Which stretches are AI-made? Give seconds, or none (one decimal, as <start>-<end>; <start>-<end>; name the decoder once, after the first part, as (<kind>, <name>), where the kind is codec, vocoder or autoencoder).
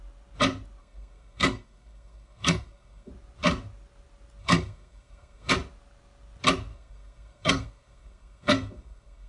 0.8-3.1 (codec, SNAC); 4.4-5.5; 6.7-9.3